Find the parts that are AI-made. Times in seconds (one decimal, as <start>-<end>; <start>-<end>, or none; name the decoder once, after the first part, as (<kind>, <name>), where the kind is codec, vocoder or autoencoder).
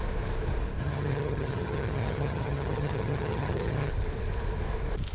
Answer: 0.8-3.9 (vocoder, HiFi-GAN)